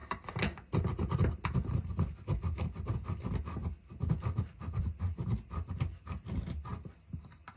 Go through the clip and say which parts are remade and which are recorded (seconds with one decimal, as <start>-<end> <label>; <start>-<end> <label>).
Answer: 0.0-7.6 recorded